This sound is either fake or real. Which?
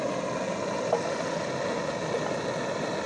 real